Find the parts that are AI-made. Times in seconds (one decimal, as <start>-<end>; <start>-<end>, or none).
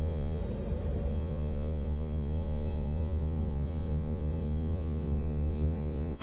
0.0-0.4; 1.1-6.2